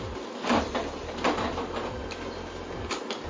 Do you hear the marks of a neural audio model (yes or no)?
no